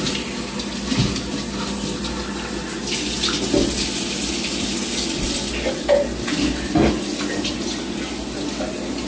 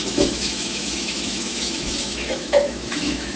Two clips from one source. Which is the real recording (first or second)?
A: first